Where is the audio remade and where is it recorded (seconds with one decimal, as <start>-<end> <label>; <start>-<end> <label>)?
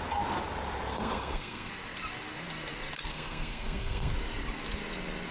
0.0-0.9 recorded; 0.9-1.7 remade; 1.7-3.1 recorded; 3.1-4.1 remade; 4.1-5.3 recorded